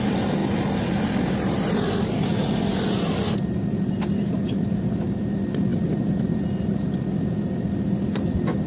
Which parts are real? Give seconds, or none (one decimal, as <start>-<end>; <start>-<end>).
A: 0.0-8.7